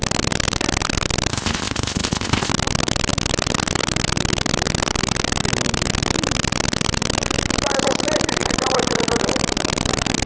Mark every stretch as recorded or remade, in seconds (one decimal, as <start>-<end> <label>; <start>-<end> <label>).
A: 0.0-1.3 recorded; 1.3-2.5 remade; 2.5-10.3 recorded